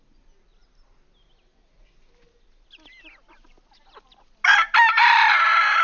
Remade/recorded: recorded